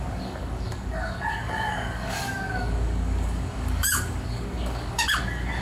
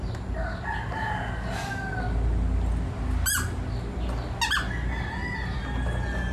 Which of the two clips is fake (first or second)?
first